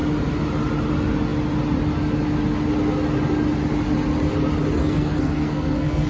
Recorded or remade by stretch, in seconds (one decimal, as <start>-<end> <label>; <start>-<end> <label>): 0.0-4.8 recorded; 4.8-6.1 remade